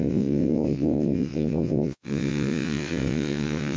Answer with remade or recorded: remade